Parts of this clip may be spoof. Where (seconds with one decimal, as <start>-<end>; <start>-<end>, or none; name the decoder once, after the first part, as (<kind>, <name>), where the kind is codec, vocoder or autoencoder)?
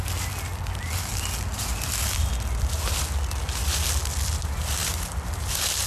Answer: none